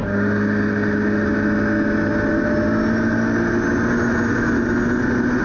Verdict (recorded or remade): recorded